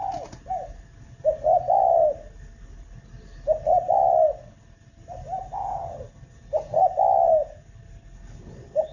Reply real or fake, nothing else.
real